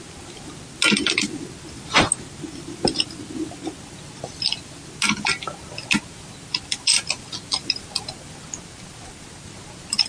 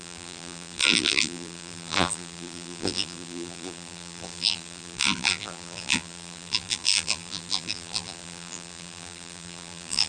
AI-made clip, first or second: second